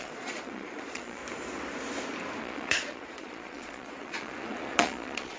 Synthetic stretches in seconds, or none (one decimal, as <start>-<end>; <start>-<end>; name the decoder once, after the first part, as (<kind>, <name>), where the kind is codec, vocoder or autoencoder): 0.0-1.2 (vocoder, Vocos); 2.4-5.4